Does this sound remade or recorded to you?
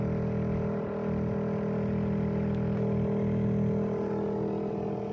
recorded